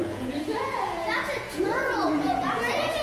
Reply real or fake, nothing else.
fake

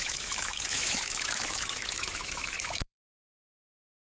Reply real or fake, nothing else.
fake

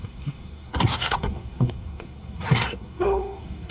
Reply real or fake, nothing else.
fake